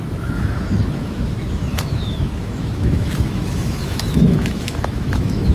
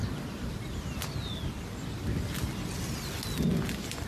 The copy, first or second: first